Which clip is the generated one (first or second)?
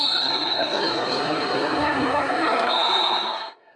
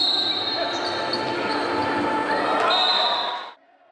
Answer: first